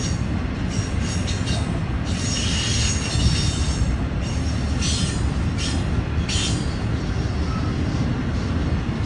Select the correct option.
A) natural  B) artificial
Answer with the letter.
A